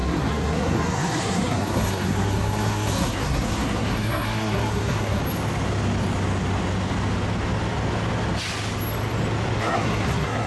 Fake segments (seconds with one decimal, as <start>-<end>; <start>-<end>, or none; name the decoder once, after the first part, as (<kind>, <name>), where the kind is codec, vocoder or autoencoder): 0.0-5.2 (codec, SNAC); 9.6-10.5